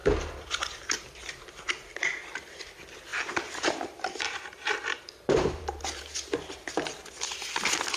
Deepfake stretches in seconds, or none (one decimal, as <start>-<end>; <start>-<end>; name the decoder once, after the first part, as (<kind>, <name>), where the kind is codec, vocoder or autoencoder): 0.0-2.4 (vocoder, BigVGAN v2); 3.1-6.9

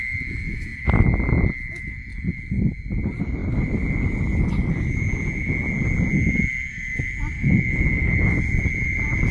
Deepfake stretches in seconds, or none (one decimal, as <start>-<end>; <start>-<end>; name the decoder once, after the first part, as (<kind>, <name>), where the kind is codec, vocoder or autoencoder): none

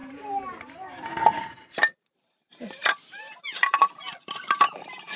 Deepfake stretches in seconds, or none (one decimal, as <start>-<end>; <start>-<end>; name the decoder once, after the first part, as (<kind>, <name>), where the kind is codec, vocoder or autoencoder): 0.0-3.8 (vocoder, BigVGAN v2); 4.3-5.2